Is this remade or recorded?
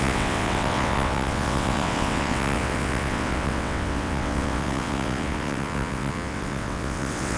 remade